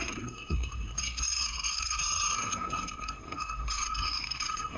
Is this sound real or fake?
fake